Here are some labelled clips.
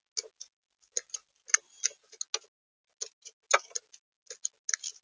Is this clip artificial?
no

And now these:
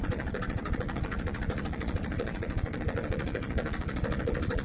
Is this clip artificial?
yes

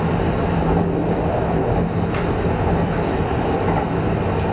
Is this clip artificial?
no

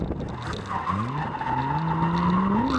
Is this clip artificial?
no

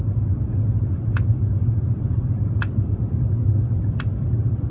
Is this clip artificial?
no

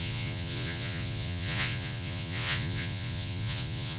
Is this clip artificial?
yes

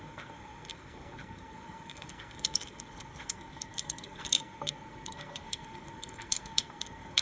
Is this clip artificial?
yes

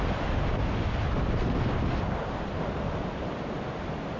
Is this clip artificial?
no